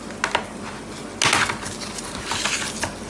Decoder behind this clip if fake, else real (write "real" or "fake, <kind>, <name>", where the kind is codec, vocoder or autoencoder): real